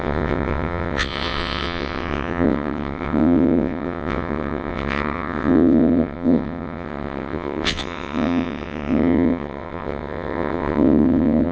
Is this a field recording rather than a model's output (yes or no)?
no